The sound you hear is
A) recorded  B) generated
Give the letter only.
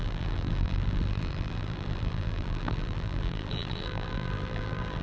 B